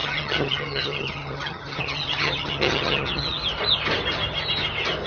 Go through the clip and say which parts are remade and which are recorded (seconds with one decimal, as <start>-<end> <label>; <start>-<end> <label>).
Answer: 0.0-3.4 remade; 3.4-5.1 recorded